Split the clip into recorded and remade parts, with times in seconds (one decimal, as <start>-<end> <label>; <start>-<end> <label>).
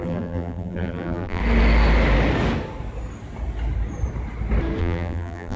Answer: 0.0-1.4 remade; 1.4-4.8 recorded; 4.8-5.6 remade